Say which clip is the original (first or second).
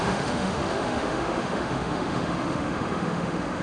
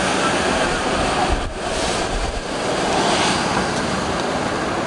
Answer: second